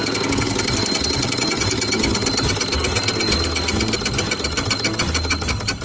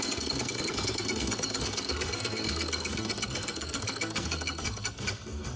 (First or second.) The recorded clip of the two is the first